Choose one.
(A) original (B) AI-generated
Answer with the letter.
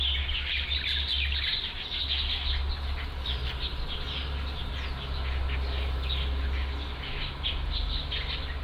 A